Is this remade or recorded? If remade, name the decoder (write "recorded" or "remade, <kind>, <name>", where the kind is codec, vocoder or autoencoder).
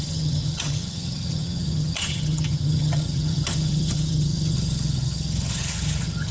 remade, vocoder, HiFi-GAN